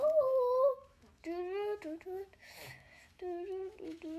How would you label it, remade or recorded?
remade